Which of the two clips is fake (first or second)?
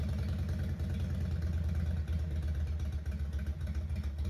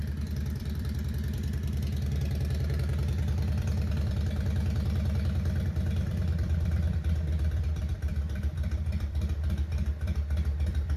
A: second